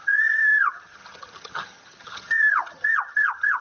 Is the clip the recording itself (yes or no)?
no